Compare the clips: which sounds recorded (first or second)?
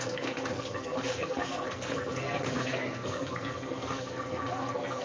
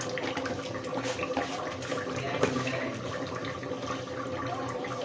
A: second